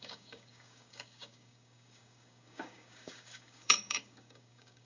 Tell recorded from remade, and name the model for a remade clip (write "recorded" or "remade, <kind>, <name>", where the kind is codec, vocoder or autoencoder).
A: remade, codec, DAC